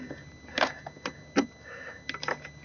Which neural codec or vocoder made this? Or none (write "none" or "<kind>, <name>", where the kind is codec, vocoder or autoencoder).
none